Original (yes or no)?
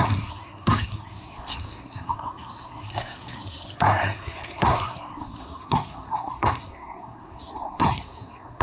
no